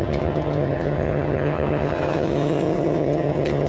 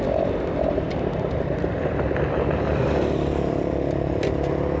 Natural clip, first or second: second